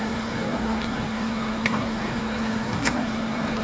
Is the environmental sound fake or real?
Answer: fake